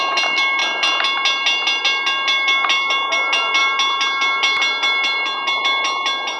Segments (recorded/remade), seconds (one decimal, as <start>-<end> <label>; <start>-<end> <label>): 0.0-6.4 recorded